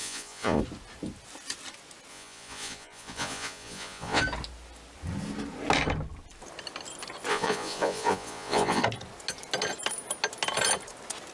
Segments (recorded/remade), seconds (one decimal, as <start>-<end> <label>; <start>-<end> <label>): 0.0-0.6 remade; 0.6-2.1 recorded; 2.1-4.2 remade; 4.2-7.3 recorded; 7.3-8.8 remade; 8.8-11.3 recorded